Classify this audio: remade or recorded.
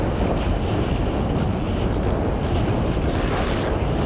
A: recorded